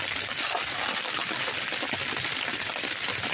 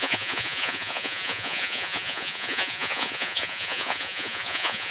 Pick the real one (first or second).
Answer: first